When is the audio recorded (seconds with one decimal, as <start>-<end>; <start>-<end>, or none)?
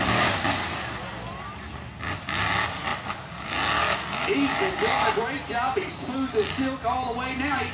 0.0-7.7